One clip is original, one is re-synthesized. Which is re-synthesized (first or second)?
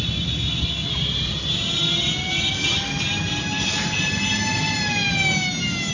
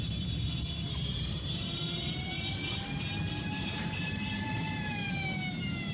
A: second